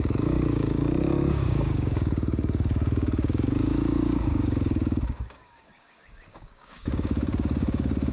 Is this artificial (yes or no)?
yes